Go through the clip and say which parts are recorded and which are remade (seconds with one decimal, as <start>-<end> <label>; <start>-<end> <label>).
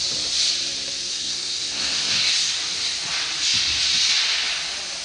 0.0-1.1 recorded; 1.1-2.6 remade; 2.6-5.0 recorded